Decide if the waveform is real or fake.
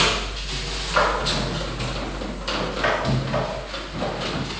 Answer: real